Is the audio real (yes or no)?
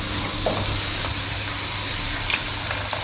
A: yes